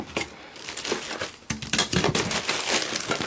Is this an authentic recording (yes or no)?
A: yes